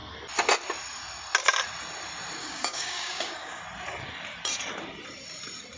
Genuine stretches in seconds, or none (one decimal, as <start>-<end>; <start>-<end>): 0.0-2.4; 3.6-5.8